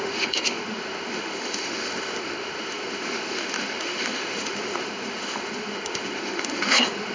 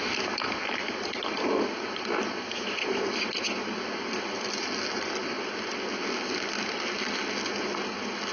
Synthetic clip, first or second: first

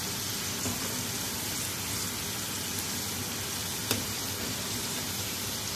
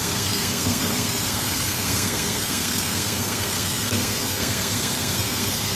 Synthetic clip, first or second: second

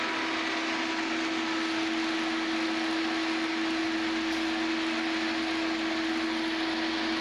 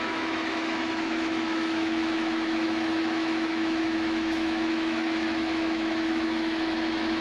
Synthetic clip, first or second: second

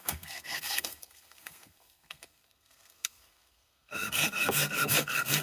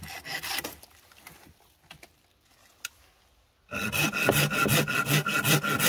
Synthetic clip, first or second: first